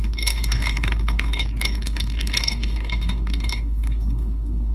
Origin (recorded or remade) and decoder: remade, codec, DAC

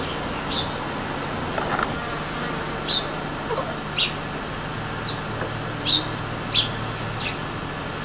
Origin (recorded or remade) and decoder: recorded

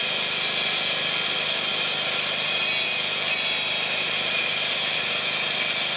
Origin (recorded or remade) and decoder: recorded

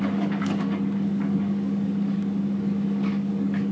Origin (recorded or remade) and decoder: remade, codec, DAC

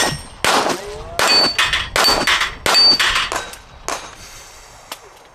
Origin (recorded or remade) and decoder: recorded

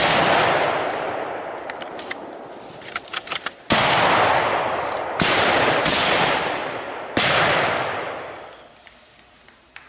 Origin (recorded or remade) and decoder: remade, vocoder, BigVGAN v2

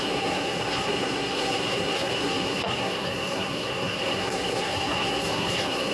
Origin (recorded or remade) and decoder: remade, codec, SNAC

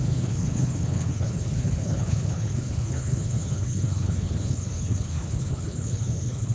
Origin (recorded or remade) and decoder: remade, codec, HILCodec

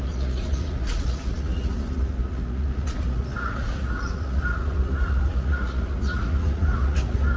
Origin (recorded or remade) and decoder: remade, vocoder, Vocos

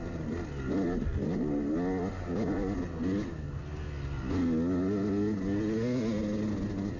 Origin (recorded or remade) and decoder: recorded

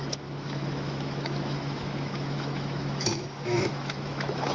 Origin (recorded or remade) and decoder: remade, autoencoder, DAC-VAE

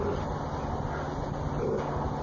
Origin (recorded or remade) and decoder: recorded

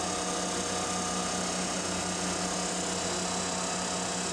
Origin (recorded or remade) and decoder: recorded